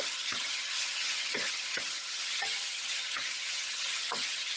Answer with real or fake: fake